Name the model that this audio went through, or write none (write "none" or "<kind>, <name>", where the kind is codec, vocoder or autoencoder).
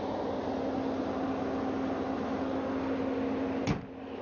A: none